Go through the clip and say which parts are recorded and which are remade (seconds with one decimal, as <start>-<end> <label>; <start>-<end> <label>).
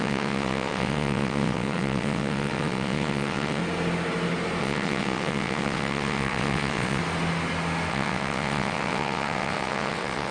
0.0-3.6 remade; 3.6-4.6 recorded; 4.6-7.0 remade; 7.0-7.9 recorded; 7.9-10.3 remade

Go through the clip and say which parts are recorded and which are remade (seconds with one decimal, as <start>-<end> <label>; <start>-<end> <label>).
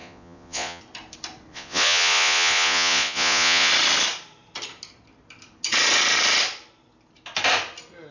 0.0-0.8 remade; 0.8-1.5 recorded; 1.5-3.7 remade; 3.7-8.1 recorded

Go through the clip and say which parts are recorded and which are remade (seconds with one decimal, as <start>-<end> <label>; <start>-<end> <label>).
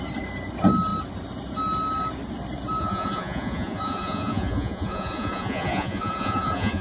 0.0-2.8 recorded; 2.8-6.8 remade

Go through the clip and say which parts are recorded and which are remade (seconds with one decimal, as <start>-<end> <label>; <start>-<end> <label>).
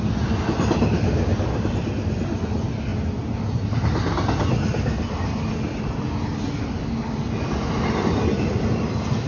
0.0-9.3 recorded